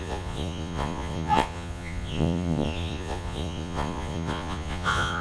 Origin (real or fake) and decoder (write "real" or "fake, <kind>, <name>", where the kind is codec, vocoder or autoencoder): fake, vocoder, Vocos